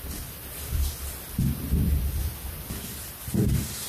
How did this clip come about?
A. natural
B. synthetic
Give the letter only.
A